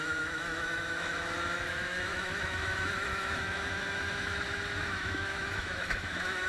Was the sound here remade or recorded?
remade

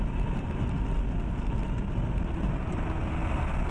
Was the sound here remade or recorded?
recorded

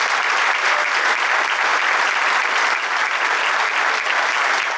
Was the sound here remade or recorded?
recorded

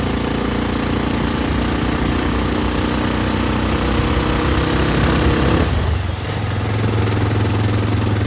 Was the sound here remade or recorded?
recorded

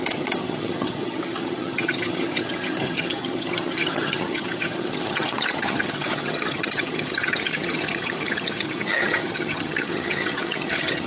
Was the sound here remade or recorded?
remade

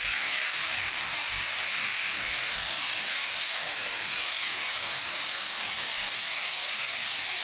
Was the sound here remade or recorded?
remade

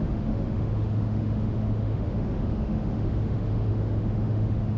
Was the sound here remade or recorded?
remade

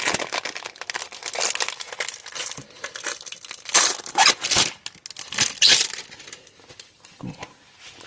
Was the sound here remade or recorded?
recorded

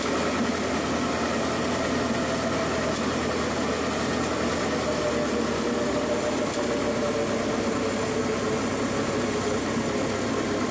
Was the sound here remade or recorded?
recorded